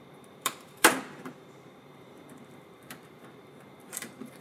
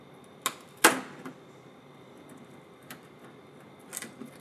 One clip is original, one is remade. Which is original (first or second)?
second